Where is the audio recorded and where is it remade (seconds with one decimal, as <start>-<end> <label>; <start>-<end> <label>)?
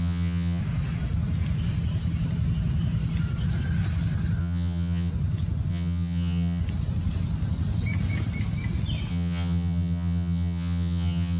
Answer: 0.0-0.6 remade; 0.6-4.4 recorded; 4.4-5.1 remade; 5.1-5.7 recorded; 5.7-6.6 remade; 6.6-9.1 recorded; 9.1-11.4 remade